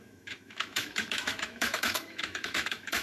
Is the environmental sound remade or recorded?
remade